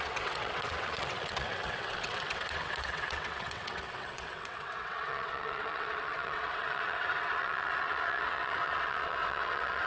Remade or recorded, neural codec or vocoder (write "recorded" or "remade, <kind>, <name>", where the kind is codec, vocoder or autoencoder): remade, vocoder, WaveNeXt